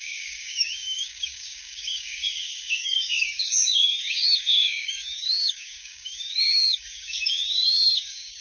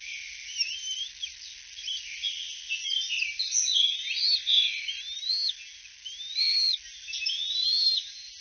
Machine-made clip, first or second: first